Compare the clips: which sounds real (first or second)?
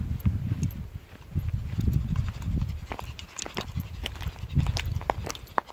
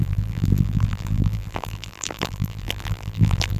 first